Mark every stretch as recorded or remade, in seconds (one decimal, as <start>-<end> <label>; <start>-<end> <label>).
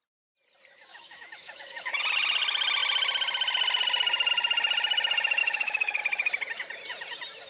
0.0-0.9 recorded; 0.9-2.0 remade; 2.0-5.4 recorded; 5.4-6.0 remade; 6.0-7.5 recorded